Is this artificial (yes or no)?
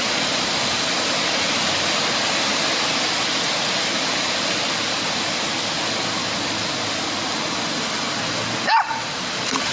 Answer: no